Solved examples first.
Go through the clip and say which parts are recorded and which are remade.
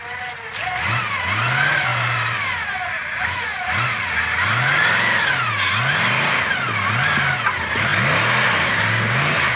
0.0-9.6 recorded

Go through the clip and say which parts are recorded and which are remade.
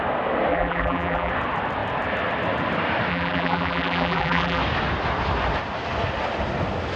0.0-0.5 recorded; 0.5-1.3 remade; 1.3-3.1 recorded; 3.1-4.6 remade; 4.6-7.0 recorded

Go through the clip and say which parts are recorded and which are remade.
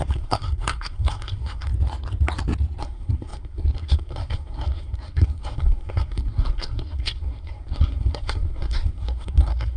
0.0-1.7 remade; 1.7-2.8 recorded; 2.8-9.8 remade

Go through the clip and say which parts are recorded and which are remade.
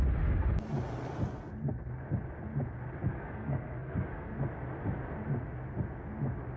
0.0-3.0 recorded; 3.0-4.4 remade; 4.4-6.6 recorded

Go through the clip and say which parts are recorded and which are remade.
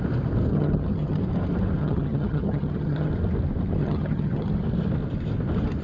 0.0-0.5 recorded; 0.5-1.2 remade; 1.2-1.8 recorded; 1.8-3.1 remade; 3.1-3.8 recorded; 3.8-4.5 remade; 4.5-5.8 recorded